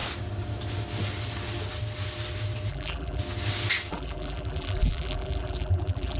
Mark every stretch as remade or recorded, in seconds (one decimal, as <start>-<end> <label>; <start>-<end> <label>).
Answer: 0.0-2.7 recorded; 2.7-3.2 remade; 3.2-3.9 recorded; 3.9-6.2 remade